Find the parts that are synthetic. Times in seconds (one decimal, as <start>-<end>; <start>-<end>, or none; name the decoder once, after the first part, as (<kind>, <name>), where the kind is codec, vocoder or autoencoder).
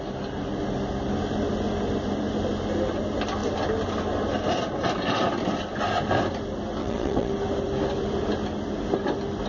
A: 6.8-7.3 (vocoder, WaveNeXt)